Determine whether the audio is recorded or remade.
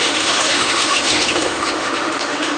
remade